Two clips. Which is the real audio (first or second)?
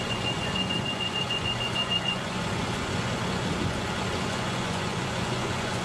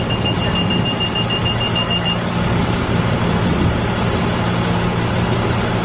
second